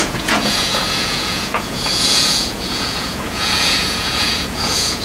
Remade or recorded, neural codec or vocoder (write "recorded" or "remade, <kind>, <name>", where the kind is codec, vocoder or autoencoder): remade, vocoder, Vocos